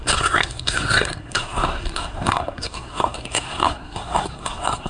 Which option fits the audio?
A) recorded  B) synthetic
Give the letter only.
B